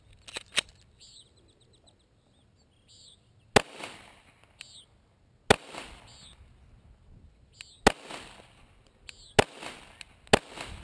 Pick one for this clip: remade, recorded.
recorded